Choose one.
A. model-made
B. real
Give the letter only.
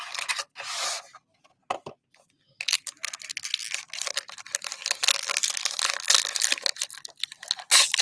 B